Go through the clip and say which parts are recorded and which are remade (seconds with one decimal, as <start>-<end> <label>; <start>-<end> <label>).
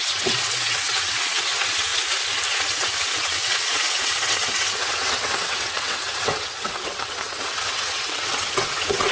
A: 0.0-1.9 remade; 1.9-2.5 recorded; 2.5-9.1 remade